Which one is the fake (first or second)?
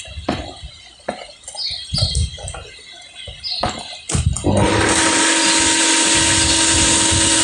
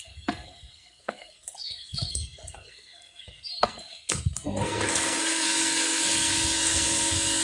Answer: second